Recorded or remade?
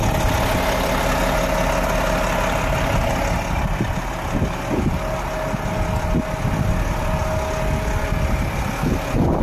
recorded